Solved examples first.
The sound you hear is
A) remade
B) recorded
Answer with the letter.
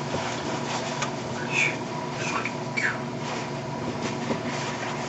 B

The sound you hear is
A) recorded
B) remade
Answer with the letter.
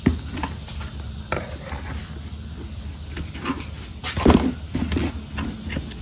A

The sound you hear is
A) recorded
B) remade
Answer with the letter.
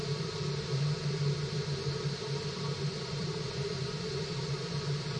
B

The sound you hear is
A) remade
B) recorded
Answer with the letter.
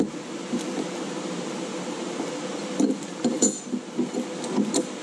B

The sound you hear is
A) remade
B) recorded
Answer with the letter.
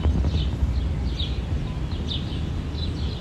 B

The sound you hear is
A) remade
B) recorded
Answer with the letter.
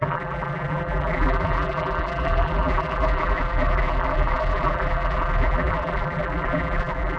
A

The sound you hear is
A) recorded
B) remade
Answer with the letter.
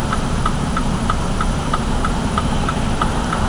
B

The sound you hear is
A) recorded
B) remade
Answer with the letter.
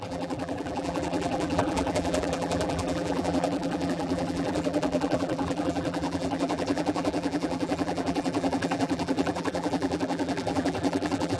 B